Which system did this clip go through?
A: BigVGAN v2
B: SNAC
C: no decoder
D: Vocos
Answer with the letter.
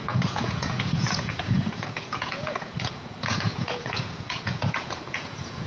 D